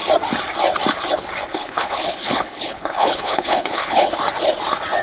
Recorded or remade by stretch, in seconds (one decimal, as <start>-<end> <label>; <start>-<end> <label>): 0.0-1.5 recorded; 1.5-4.2 remade; 4.2-5.0 recorded